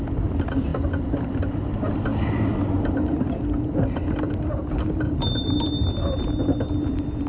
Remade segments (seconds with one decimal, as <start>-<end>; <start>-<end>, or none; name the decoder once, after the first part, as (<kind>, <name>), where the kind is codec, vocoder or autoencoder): 0.0-7.3 (vocoder, BigVGAN v2)